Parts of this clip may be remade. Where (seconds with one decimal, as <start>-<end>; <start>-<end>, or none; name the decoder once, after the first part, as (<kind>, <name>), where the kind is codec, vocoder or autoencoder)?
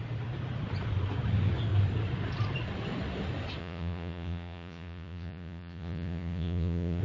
3.6-7.0 (vocoder, Vocos)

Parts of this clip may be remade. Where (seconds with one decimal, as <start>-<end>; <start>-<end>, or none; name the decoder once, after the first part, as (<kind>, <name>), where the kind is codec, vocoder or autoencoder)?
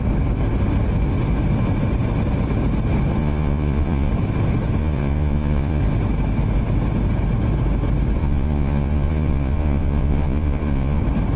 3.2-4.1 (vocoder, Vocos); 4.8-5.8; 8.2-11.0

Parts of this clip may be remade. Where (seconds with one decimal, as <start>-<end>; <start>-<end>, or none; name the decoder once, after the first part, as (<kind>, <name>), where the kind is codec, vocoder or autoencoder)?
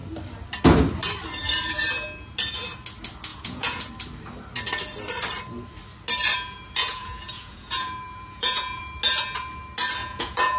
3.3-3.8 (vocoder, Vocos); 6.8-8.8; 10.0-10.6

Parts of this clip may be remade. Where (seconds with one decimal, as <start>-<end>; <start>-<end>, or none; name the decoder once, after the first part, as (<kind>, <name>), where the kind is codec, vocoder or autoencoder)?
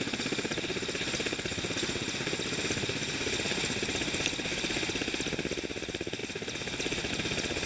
none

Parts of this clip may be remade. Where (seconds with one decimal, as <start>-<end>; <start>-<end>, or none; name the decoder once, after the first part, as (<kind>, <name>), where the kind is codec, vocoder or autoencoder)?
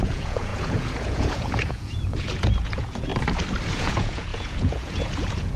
0.0-3.1 (vocoder, Vocos); 3.7-5.6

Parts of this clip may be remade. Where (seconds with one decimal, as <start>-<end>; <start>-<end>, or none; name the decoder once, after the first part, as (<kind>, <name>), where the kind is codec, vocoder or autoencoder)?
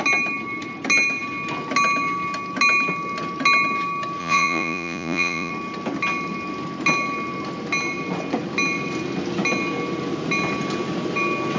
4.2-5.5 (vocoder, Vocos)